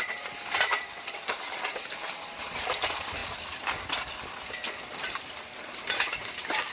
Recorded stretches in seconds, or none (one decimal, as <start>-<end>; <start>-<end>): 3.2-5.0